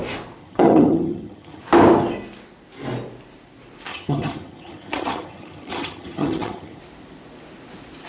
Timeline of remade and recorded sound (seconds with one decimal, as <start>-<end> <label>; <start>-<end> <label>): 0.0-0.4 recorded; 0.4-1.6 remade; 1.6-3.9 recorded; 3.9-6.8 remade; 6.8-8.1 recorded

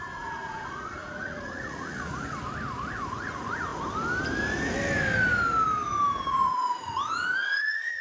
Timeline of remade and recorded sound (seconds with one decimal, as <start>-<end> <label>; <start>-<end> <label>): 0.0-2.1 remade; 2.1-3.1 recorded; 3.1-3.7 remade; 3.7-6.3 recorded; 6.3-8.0 remade

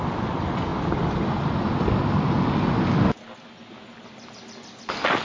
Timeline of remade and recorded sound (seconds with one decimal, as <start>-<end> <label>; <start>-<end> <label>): 0.0-5.2 recorded

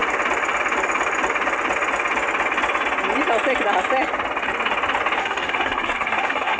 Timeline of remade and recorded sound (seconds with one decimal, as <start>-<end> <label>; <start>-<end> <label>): 0.0-5.2 recorded; 5.2-6.6 remade

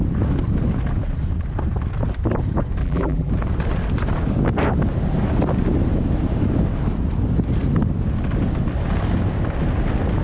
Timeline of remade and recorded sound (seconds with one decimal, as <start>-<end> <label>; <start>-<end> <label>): 0.0-2.8 recorded; 2.8-3.3 remade; 3.3-10.2 recorded

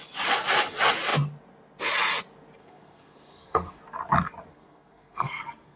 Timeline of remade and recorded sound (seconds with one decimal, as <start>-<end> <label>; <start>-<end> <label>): 0.0-2.6 recorded; 2.6-3.8 remade; 3.8-4.5 recorded; 4.5-5.8 remade

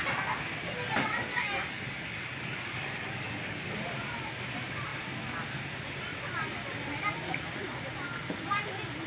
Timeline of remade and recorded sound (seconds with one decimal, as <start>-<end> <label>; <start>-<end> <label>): 0.0-1.3 recorded; 1.3-3.7 remade; 3.7-9.1 recorded

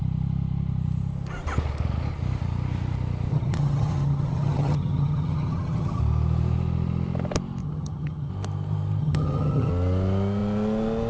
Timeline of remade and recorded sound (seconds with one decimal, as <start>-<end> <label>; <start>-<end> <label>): 0.0-3.3 recorded; 3.3-6.0 remade; 6.0-7.6 recorded; 7.6-8.3 remade; 8.3-9.0 recorded; 9.0-9.7 remade; 9.7-11.1 recorded